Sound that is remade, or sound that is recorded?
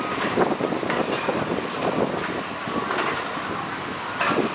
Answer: recorded